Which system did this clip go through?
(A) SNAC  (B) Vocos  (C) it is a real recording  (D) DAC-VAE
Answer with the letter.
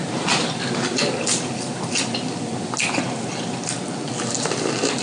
C